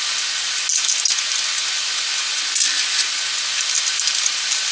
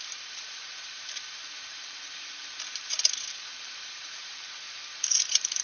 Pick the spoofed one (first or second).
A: second